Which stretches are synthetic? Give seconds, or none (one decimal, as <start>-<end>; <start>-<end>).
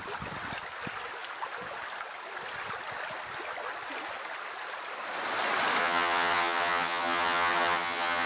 5.8-8.3